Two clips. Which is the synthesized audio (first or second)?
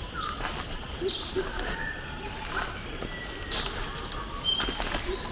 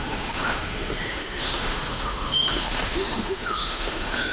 second